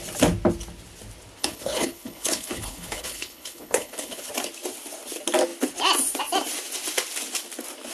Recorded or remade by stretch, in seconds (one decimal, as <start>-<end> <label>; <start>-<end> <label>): 0.0-1.4 recorded; 1.4-4.3 remade; 4.3-7.9 recorded